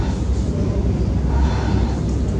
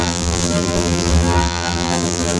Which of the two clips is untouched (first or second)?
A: first